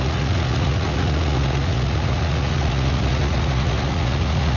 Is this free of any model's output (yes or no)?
no